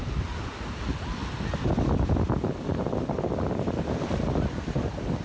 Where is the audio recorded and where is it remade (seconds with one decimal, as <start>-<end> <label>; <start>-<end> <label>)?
0.0-5.2 recorded